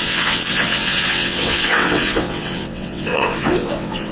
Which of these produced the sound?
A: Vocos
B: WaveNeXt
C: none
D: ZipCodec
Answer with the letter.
B